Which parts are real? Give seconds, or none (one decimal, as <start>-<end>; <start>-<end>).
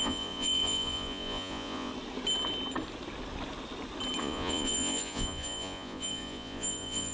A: 1.9-4.2